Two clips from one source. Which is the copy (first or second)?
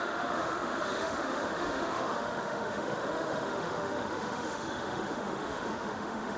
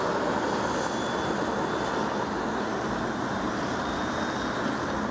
first